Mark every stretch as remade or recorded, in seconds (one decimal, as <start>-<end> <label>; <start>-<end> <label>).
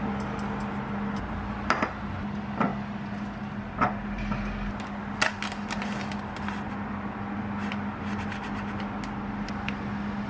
0.0-10.3 recorded